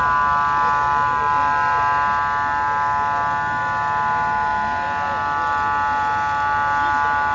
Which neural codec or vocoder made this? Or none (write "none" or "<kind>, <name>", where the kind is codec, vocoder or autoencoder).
none